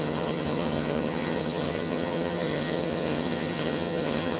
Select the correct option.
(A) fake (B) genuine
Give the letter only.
A